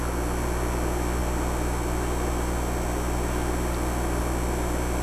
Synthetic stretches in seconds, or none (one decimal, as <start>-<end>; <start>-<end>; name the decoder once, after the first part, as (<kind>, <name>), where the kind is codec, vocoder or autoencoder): none